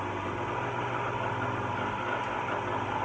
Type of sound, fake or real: real